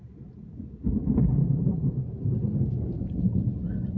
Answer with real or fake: real